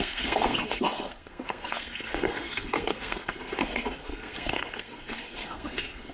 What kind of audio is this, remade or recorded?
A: remade